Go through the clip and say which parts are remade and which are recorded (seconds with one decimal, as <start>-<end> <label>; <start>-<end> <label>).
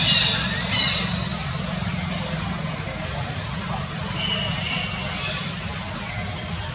0.0-6.7 recorded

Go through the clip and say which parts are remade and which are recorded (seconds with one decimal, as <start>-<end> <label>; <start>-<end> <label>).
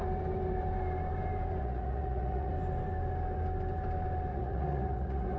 0.0-1.6 recorded; 1.6-2.5 remade; 2.5-4.3 recorded; 4.3-5.4 remade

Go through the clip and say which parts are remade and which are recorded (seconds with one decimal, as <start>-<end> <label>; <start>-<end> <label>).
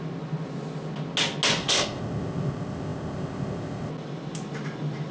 0.0-1.6 recorded; 1.6-3.9 remade; 3.9-5.1 recorded